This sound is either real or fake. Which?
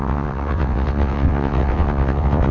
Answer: fake